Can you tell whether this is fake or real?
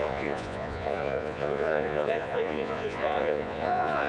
fake